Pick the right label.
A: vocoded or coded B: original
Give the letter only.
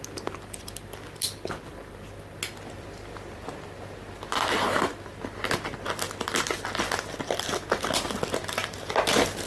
B